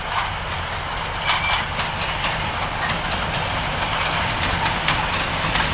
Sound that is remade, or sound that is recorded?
recorded